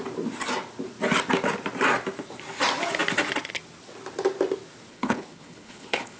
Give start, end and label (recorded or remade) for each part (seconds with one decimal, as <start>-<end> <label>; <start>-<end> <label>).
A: 0.0-4.9 recorded; 4.9-6.2 remade